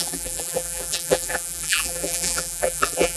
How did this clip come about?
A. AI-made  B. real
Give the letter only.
A